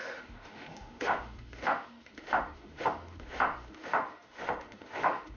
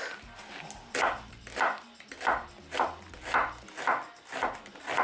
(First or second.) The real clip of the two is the second